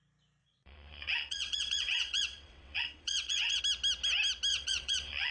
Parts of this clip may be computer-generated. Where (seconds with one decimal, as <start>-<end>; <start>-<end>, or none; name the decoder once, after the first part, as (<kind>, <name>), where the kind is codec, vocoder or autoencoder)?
0.4-3.6 (vocoder, WaveNeXt); 4.5-5.3